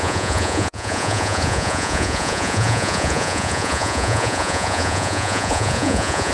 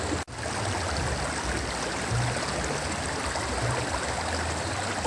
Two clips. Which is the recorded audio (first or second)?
second